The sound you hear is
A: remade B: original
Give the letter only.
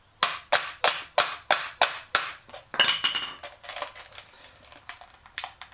B